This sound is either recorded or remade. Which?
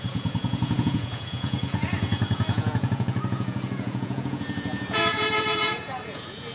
remade